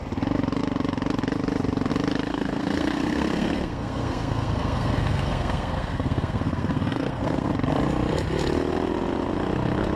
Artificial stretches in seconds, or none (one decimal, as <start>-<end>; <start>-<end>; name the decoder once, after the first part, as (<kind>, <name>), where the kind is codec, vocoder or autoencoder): 2.3-7.5 (codec, SNAC)